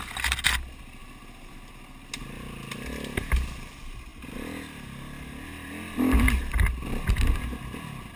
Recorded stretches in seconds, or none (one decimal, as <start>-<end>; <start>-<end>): 0.0-8.2